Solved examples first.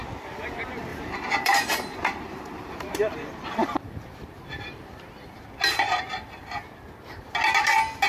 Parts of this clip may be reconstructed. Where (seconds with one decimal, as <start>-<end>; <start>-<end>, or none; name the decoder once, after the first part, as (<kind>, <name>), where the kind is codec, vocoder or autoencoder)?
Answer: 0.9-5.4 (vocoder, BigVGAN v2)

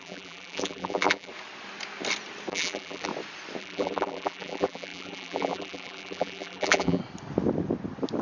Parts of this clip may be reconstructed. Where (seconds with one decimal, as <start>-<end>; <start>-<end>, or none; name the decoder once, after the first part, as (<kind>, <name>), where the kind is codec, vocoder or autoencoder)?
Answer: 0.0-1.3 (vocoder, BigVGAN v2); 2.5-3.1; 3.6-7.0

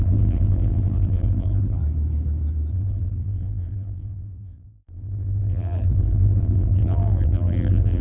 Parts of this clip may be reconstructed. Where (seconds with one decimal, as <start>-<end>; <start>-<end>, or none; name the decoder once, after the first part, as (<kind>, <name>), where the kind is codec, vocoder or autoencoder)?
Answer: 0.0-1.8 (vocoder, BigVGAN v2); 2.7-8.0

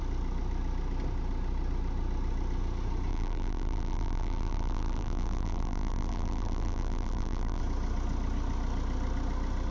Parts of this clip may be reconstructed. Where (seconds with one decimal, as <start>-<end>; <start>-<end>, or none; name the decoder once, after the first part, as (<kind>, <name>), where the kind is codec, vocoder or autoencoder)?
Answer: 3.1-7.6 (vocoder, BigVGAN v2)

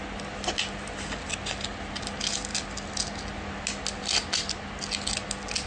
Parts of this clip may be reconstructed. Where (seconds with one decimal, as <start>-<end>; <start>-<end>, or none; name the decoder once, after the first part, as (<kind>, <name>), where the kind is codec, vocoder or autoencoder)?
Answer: none

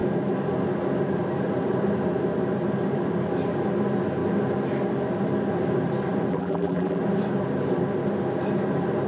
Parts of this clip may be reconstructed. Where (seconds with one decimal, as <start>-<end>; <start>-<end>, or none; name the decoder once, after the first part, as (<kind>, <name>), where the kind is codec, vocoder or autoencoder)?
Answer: 6.3-7.0 (vocoder, BigVGAN v2)

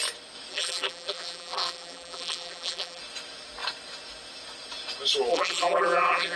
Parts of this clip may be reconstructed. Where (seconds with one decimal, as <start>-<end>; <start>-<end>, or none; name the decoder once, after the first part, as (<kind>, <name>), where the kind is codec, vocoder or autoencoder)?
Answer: 0.5-3.0 (vocoder, BigVGAN v2); 5.3-6.4